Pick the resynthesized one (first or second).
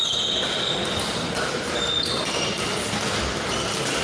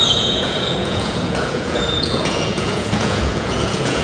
second